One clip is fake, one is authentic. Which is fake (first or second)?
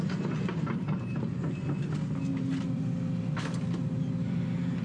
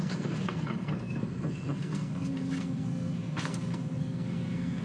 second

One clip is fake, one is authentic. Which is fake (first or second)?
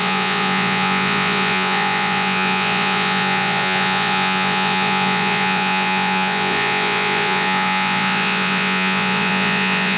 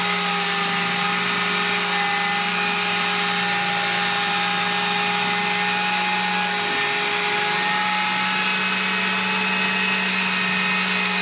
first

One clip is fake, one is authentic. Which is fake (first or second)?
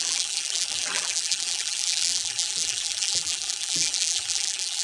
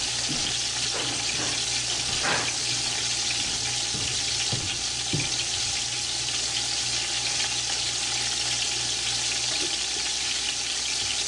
first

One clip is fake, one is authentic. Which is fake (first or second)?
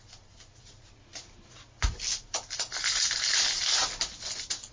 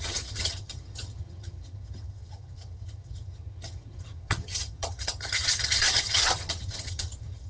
second